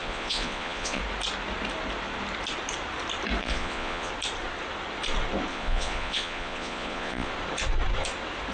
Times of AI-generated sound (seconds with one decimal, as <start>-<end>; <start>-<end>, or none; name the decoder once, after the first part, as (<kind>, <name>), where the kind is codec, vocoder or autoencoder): 0.0-1.0 (vocoder, Vocos); 3.4-4.1; 5.5-7.3